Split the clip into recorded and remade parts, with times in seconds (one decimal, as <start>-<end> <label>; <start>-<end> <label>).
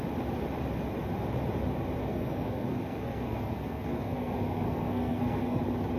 0.0-2.0 recorded; 2.0-5.6 remade; 5.6-6.0 recorded